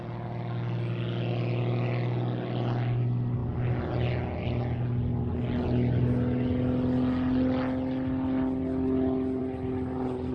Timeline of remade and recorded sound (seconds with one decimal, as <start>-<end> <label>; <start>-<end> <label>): 0.0-10.3 recorded